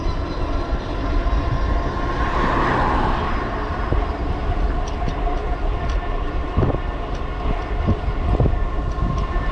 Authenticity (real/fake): real